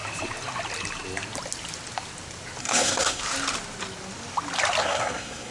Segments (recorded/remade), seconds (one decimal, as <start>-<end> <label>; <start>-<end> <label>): 0.0-2.6 recorded; 2.6-3.2 remade; 3.2-4.8 recorded; 4.8-5.5 remade